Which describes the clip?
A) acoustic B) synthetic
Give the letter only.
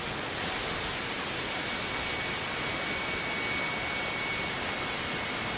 A